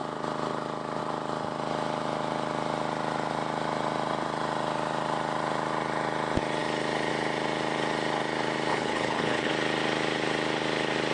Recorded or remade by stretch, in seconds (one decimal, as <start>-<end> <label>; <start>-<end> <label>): 0.0-8.7 recorded; 8.7-9.5 remade; 9.5-11.1 recorded